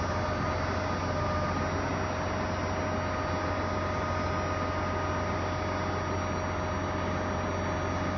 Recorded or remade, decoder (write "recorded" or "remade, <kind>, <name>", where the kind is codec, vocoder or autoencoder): recorded